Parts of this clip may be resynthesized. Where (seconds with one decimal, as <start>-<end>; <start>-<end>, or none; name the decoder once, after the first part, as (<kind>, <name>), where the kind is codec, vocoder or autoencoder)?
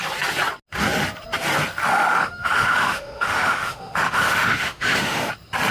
1.9-5.3 (autoencoder, DAC-VAE)